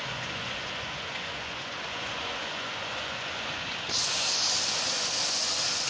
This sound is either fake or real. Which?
fake